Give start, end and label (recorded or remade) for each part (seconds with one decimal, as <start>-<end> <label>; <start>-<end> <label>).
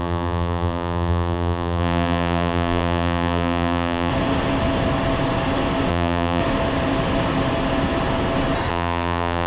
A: 0.0-4.1 remade; 4.1-5.9 recorded; 5.9-6.4 remade; 6.4-8.7 recorded; 8.7-9.5 remade